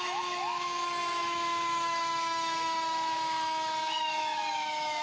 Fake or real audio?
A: fake